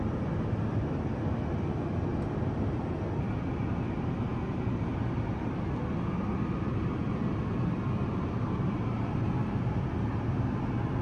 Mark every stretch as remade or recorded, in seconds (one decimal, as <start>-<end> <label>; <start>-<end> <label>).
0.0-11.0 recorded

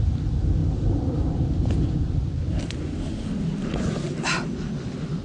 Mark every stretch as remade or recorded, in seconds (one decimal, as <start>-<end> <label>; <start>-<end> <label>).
0.0-5.2 recorded

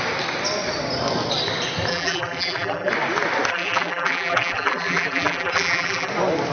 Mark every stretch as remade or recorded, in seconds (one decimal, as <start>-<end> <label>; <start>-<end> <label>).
0.0-1.9 recorded; 1.9-2.9 remade; 2.9-3.5 recorded; 3.5-6.1 remade; 6.1-6.5 recorded

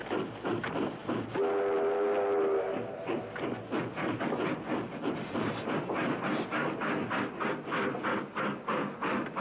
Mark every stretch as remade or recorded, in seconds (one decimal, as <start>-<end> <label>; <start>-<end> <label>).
0.0-9.4 recorded